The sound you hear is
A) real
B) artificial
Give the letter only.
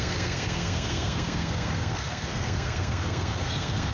B